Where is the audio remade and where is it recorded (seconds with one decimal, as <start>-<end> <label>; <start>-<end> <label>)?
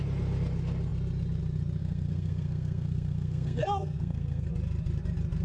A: 0.0-1.8 recorded; 1.8-4.5 remade; 4.5-5.4 recorded